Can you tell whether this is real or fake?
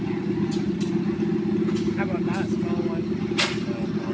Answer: real